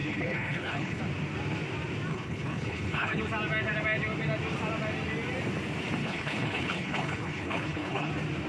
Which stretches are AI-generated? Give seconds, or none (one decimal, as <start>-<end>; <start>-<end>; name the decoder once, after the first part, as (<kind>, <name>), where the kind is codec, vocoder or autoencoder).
0.0-1.0 (codec, HILCodec); 2.1-3.2; 6.0-8.1